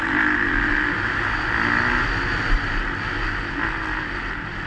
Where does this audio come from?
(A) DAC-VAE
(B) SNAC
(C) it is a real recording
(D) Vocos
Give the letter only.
C